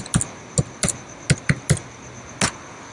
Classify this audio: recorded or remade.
recorded